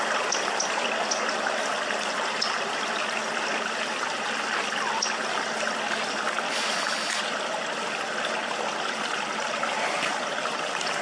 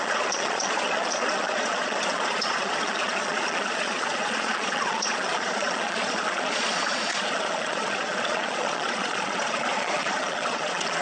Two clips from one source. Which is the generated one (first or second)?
second